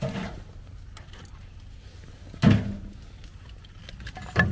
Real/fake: real